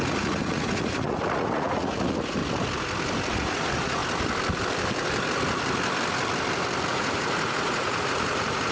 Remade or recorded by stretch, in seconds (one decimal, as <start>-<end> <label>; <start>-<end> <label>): 0.0-2.4 remade; 2.4-3.3 recorded; 3.3-4.0 remade; 4.0-6.9 recorded; 6.9-8.7 remade